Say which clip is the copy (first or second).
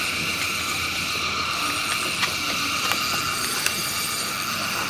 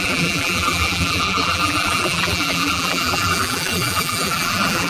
second